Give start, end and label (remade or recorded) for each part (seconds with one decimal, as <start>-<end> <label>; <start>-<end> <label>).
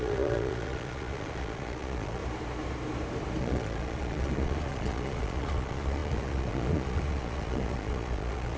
0.0-2.2 remade; 2.2-3.4 recorded; 3.4-8.6 remade